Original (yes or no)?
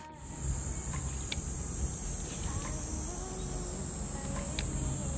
yes